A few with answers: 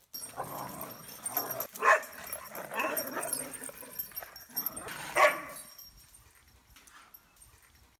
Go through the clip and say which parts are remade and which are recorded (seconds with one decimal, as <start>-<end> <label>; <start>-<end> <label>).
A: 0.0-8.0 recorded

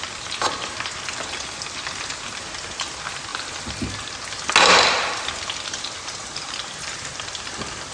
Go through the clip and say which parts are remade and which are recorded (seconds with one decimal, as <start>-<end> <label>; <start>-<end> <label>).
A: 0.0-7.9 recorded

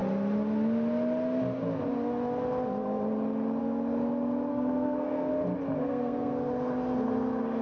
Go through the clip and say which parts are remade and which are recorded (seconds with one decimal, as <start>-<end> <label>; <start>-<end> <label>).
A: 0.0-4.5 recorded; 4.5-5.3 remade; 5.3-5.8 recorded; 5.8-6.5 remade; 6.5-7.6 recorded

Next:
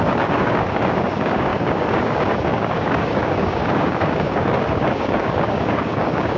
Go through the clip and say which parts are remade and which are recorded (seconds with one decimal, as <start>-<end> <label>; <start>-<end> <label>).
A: 0.0-6.4 remade

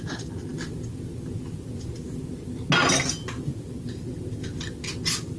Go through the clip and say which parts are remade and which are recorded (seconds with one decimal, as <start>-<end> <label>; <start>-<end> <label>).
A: 0.0-5.4 recorded